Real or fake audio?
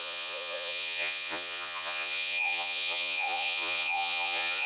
fake